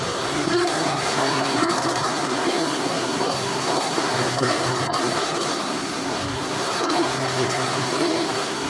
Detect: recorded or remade remade